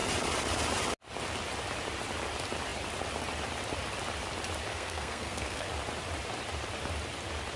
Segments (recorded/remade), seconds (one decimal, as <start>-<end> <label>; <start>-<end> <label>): 0.0-4.7 recorded; 4.7-5.7 remade; 5.7-7.6 recorded